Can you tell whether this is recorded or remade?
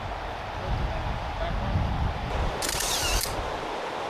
recorded